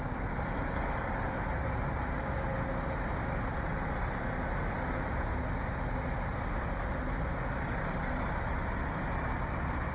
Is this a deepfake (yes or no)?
no